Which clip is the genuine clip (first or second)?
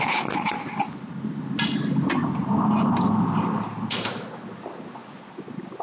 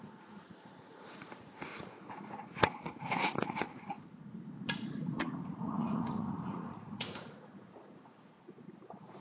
first